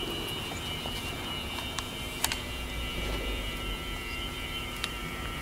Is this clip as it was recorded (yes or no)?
no